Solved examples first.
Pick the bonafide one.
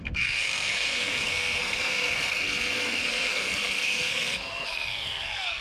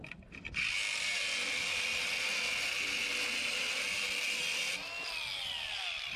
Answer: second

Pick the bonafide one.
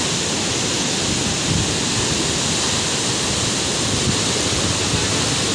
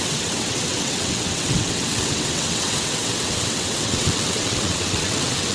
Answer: first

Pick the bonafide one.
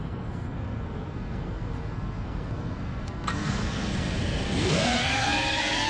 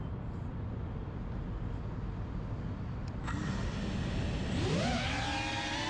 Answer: second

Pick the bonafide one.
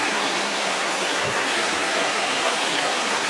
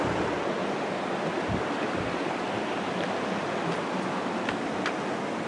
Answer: second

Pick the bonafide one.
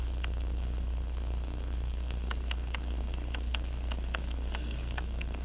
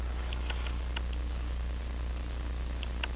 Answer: second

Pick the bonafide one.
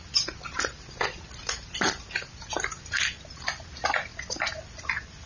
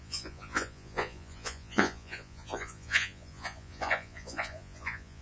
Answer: first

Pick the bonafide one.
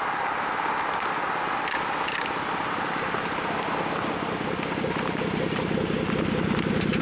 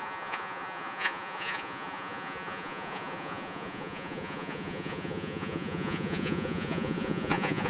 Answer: first